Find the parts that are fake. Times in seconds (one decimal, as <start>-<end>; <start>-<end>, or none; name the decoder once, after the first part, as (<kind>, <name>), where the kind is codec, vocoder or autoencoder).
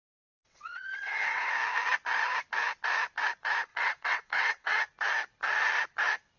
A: 0.5-1.5 (vocoder, WaveNeXt); 3.7-4.8